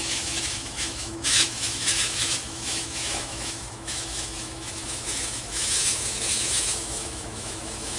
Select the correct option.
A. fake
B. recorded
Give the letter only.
A